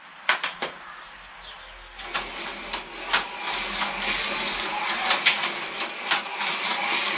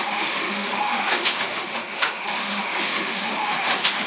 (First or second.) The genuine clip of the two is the first